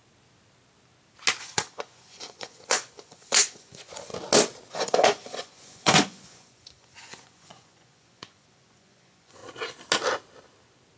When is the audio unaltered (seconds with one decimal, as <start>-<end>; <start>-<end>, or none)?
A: 0.0-1.4; 4.1-4.7; 9.4-11.0